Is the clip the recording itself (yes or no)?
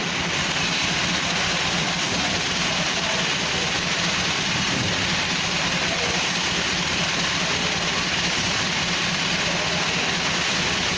yes